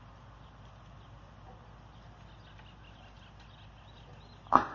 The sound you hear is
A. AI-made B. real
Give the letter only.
B